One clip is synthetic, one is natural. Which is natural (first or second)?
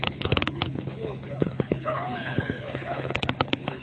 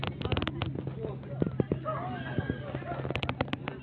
second